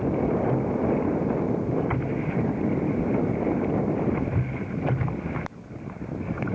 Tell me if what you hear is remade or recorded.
recorded